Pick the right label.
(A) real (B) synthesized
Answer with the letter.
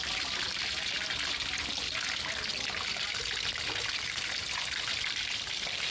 A